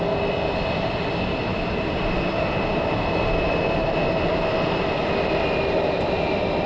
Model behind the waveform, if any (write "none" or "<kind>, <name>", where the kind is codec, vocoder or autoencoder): none